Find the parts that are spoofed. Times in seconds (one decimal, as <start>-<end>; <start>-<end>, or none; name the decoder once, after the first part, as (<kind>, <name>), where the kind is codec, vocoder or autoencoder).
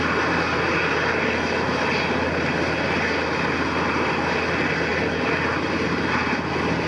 none